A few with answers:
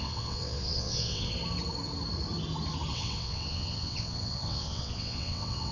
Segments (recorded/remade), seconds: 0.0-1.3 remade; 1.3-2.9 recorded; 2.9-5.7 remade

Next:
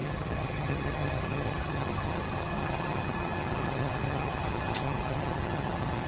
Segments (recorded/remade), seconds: 0.0-6.1 remade

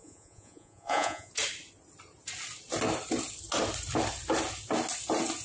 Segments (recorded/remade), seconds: 0.0-1.3 remade; 1.3-5.4 recorded

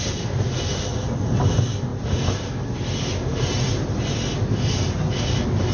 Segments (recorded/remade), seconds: 0.0-5.7 recorded